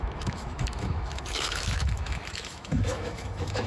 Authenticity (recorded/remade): remade